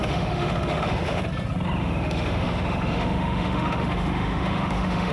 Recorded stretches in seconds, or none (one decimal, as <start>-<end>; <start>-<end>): 1.2-1.8